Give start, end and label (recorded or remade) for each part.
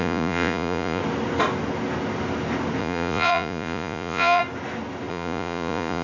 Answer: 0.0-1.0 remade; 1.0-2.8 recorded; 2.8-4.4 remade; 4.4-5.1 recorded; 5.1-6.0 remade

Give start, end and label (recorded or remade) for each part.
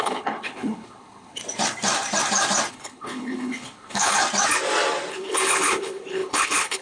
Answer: 0.0-1.4 remade; 1.4-2.7 recorded; 2.7-4.2 remade; 4.2-5.1 recorded; 5.1-6.8 remade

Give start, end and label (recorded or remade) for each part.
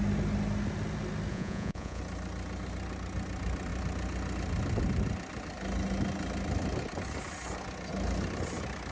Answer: 0.0-1.3 recorded; 1.3-2.0 remade; 2.0-8.9 recorded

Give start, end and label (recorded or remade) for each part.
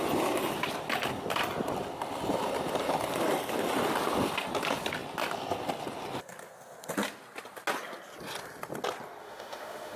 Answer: 0.0-9.2 recorded; 9.2-10.0 remade